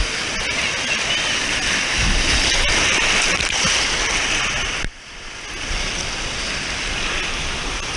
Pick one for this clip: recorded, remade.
recorded